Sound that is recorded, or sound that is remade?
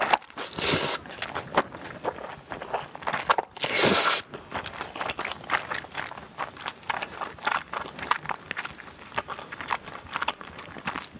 recorded